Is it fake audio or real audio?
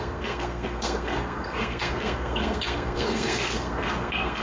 fake